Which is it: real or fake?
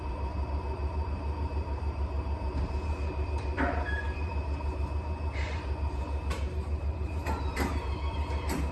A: fake